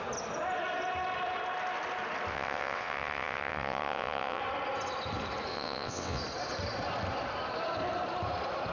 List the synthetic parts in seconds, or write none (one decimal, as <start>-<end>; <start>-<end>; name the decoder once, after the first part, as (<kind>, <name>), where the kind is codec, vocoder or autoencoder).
2.3-4.4 (vocoder, WaveNeXt); 5.5-6.2